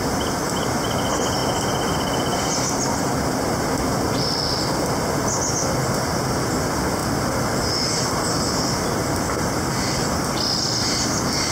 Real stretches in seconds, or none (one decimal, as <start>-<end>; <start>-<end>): 0.0-11.5

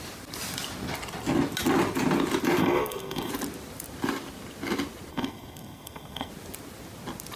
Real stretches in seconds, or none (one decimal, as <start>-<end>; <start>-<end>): 0.0-2.6; 3.3-5.1; 6.3-7.4

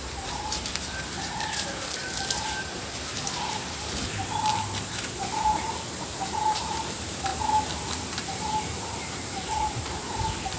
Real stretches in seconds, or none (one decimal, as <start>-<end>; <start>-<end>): 7.3-8.2

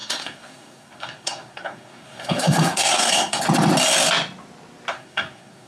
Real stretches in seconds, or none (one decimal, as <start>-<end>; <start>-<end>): 3.4-4.9

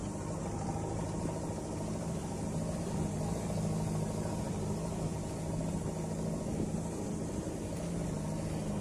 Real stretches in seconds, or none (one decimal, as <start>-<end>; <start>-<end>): 0.0-8.8

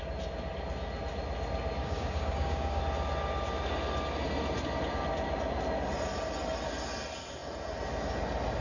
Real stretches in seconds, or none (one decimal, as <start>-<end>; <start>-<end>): 0.0-1.8; 2.8-8.6

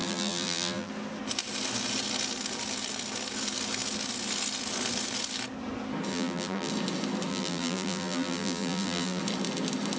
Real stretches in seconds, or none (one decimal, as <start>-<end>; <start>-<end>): 0.9-6.1; 6.7-7.3; 9.2-10.0

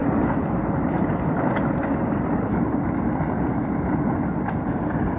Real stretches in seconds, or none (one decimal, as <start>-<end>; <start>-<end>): 0.0-5.2